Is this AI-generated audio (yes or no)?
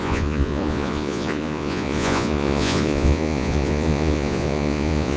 yes